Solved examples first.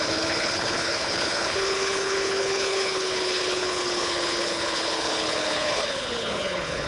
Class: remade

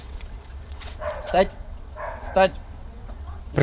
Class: remade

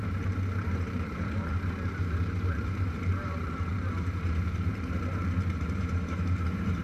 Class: remade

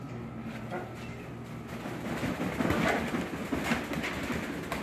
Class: recorded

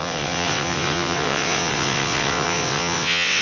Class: remade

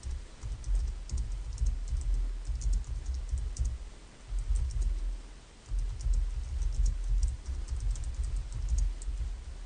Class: recorded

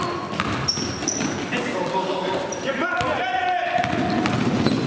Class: recorded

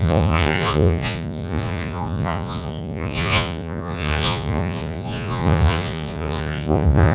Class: remade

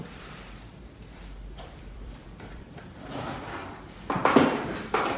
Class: remade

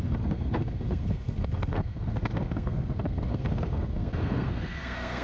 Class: remade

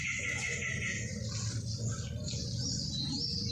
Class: recorded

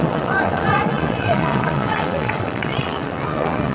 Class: remade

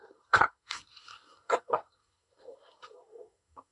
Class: remade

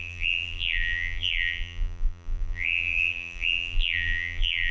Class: remade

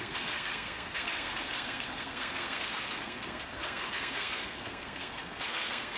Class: remade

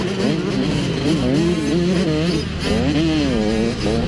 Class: recorded